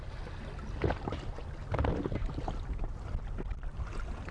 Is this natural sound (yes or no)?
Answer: yes